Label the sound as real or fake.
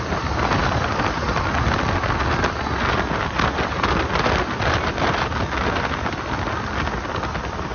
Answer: real